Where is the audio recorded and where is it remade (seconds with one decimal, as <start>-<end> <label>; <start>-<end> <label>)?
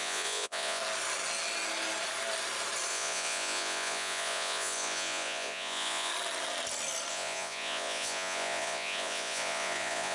0.0-0.8 remade; 0.8-2.9 recorded; 2.9-6.1 remade; 6.1-7.1 recorded; 7.1-10.1 remade